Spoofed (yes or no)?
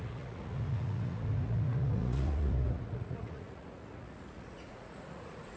yes